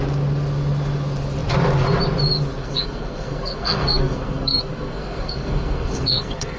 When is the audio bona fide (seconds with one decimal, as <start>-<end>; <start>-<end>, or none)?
0.0-2.6